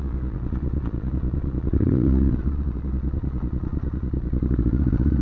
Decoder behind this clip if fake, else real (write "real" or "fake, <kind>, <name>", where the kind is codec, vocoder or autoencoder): fake, vocoder, Vocos